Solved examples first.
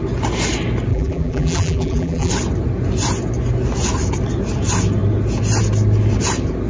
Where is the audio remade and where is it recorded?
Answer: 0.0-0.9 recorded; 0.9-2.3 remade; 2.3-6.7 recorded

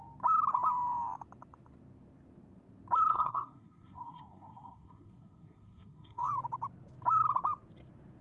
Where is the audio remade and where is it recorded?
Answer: 0.0-3.1 recorded; 3.1-6.3 remade; 6.3-8.2 recorded

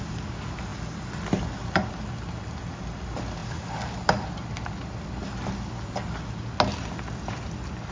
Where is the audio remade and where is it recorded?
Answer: 0.0-7.9 recorded

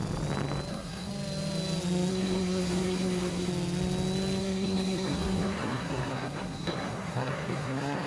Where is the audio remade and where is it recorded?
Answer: 0.0-0.7 recorded; 0.7-1.1 remade; 1.1-2.1 recorded; 2.1-3.5 remade; 3.5-4.4 recorded; 4.4-8.1 remade

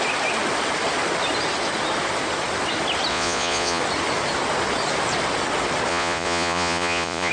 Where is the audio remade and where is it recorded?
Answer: 0.0-3.1 recorded; 3.1-3.8 remade; 3.8-5.9 recorded; 5.9-7.3 remade